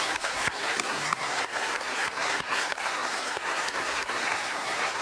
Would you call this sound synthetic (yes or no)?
yes